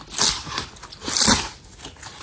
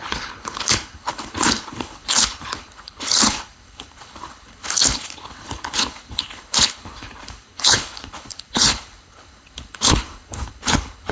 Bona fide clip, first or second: first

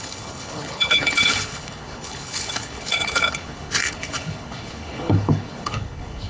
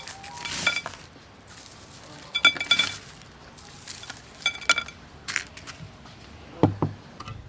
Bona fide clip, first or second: second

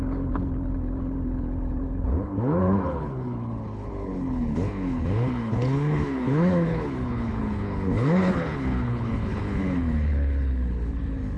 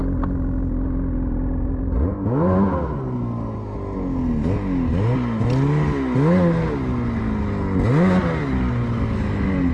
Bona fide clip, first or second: second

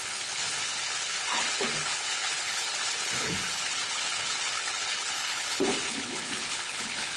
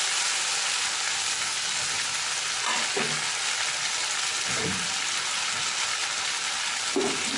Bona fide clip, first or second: second